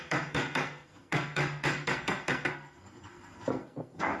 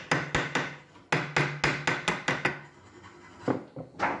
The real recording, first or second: second